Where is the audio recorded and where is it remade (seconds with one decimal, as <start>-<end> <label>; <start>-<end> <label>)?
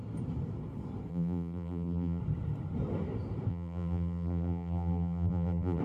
0.0-1.1 recorded; 1.1-2.2 remade; 2.2-3.5 recorded; 3.5-5.8 remade